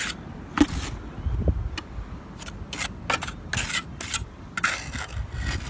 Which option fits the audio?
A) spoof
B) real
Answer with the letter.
B